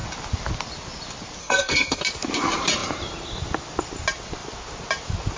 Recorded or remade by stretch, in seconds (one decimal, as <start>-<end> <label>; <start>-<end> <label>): 0.0-1.4 recorded; 1.4-2.0 remade; 2.0-5.4 recorded